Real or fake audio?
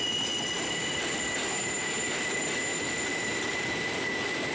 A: real